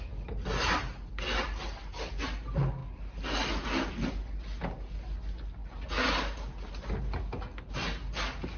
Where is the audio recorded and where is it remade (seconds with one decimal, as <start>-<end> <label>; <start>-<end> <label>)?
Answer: 0.0-8.6 recorded